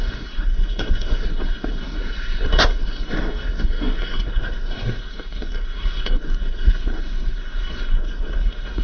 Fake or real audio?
fake